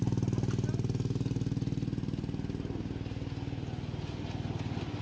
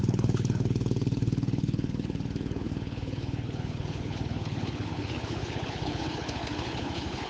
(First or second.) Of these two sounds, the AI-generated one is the second